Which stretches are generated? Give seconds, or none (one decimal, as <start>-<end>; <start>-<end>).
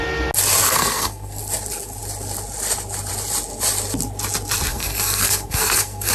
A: 0.7-1.4; 4.7-6.1